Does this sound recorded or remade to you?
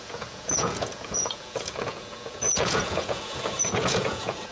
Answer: remade